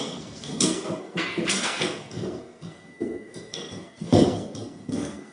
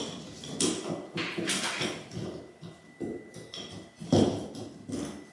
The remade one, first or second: first